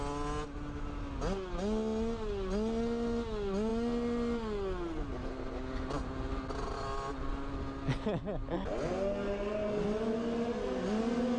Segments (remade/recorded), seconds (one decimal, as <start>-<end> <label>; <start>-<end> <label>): 0.0-11.4 recorded